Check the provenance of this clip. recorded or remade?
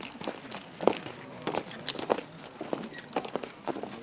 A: recorded